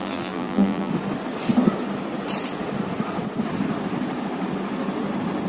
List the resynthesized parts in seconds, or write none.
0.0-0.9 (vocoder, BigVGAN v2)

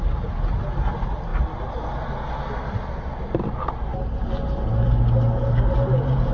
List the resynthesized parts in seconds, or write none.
none

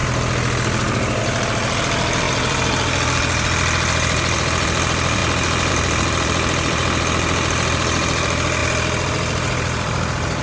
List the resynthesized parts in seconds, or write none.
1.2-5.2 (vocoder, BigVGAN v2); 5.7-10.4

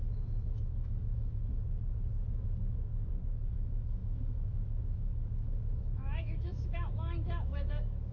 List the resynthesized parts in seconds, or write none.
0.0-1.4 (autoencoder, DAC-VAE); 3.5-8.1